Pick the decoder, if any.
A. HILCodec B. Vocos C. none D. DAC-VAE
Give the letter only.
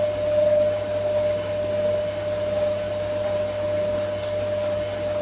C